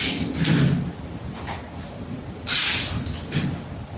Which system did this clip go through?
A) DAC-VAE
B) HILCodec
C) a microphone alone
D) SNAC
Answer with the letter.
C